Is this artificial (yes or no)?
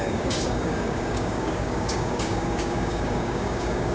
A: yes